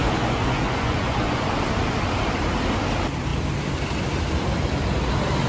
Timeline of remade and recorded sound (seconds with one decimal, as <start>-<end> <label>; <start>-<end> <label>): 0.0-1.5 remade; 1.5-5.5 recorded